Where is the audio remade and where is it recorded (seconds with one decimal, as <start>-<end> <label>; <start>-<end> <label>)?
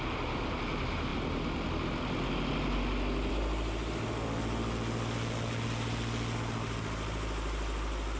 0.0-8.2 recorded